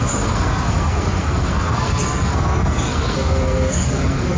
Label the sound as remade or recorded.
remade